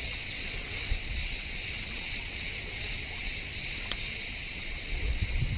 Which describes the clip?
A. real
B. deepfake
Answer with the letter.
B